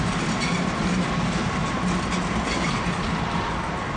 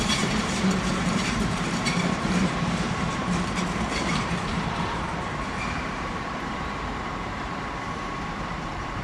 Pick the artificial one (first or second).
second